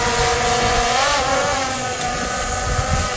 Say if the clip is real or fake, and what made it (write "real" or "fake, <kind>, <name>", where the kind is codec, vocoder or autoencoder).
fake, vocoder, Vocos